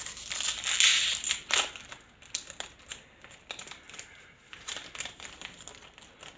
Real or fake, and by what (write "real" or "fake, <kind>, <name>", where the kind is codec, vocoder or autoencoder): real